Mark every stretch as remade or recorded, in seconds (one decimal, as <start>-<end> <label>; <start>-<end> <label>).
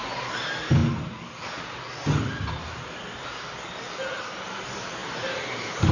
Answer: 0.0-5.9 recorded